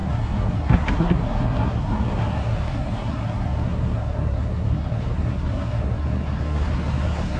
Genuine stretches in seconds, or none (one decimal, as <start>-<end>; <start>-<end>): none